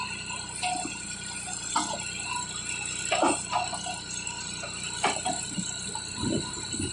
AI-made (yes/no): no